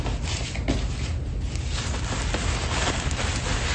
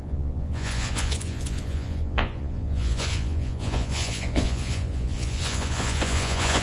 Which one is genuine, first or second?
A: first